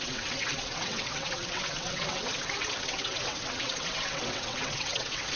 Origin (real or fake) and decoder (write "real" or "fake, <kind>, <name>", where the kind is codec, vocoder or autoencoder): fake, vocoder, WaveNeXt